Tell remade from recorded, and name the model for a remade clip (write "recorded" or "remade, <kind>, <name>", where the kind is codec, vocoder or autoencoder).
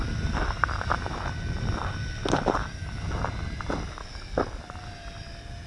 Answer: recorded